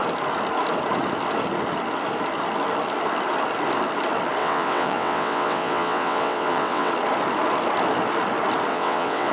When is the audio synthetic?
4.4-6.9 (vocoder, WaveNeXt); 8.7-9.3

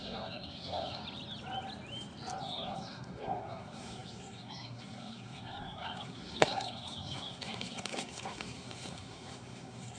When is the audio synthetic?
0.0-1.0 (codec, SNAC); 2.4-10.0

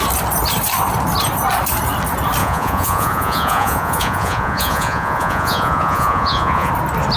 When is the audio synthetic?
2.4-6.7 (vocoder, Vocos)

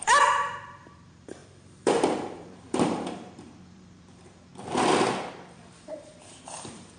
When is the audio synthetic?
0.0-4.5 (vocoder, BigVGAN v2); 5.5-7.0

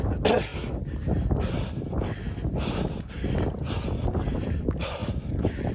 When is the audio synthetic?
none

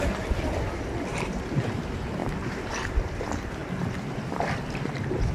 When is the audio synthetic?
0.0-2.2 (vocoder, BigVGAN v2); 2.7-5.3